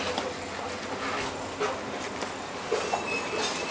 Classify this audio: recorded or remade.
recorded